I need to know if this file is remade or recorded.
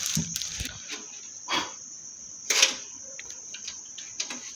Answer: remade